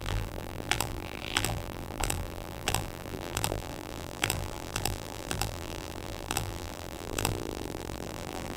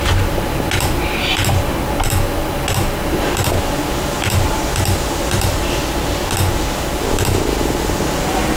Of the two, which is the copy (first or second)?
first